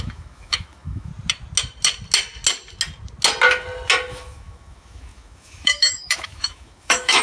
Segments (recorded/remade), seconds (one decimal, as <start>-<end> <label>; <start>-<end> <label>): 0.0-1.1 remade; 1.1-4.1 recorded; 4.1-7.2 remade